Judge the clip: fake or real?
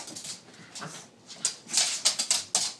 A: real